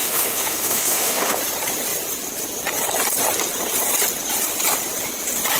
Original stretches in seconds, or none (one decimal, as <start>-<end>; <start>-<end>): 1.4-5.6